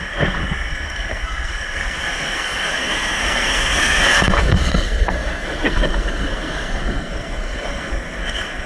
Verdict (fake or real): fake